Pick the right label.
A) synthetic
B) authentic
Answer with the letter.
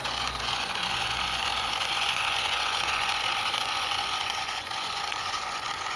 A